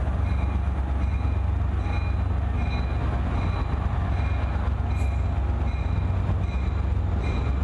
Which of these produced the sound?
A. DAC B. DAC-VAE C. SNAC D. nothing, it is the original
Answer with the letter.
D